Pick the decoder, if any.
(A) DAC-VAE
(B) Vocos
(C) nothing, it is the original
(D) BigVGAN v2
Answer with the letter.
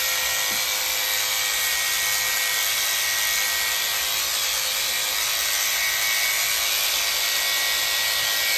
C